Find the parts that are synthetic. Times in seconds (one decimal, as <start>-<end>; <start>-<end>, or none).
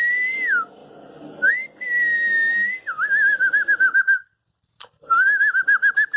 none